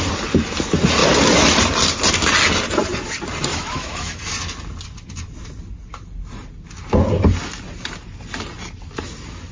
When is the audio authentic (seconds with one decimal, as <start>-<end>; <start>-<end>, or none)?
0.0-3.5; 4.2-9.5